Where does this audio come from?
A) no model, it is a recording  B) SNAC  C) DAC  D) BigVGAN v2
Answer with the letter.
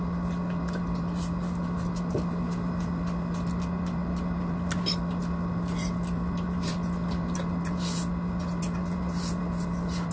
A